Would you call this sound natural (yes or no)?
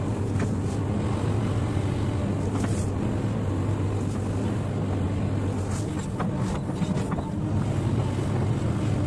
yes